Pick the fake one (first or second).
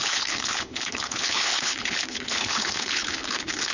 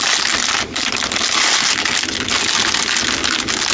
first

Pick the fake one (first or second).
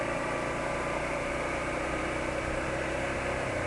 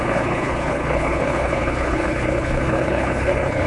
second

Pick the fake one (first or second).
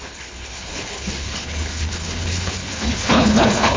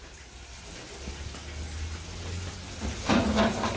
first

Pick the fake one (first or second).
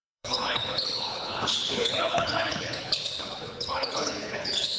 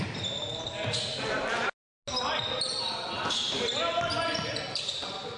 first